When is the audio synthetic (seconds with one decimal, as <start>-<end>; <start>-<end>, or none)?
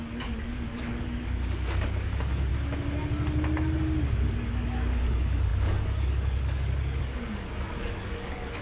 0.0-2.5; 4.0-8.6